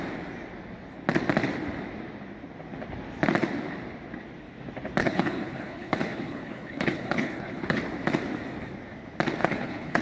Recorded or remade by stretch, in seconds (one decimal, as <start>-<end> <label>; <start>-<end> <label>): 0.0-5.0 recorded; 5.0-7.8 remade; 7.8-9.4 recorded; 9.4-10.0 remade